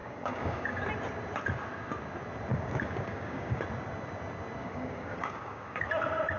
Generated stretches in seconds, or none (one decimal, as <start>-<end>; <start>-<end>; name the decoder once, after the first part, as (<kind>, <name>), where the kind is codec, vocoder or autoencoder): 0.0-0.8 (codec, DAC); 2.5-3.6; 4.6-5.8